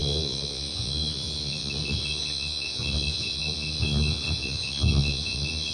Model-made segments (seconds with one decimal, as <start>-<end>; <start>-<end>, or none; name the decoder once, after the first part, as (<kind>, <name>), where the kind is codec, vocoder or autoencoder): 0.0-5.7 (vocoder, Vocos)